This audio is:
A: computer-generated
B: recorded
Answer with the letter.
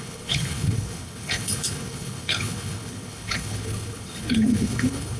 A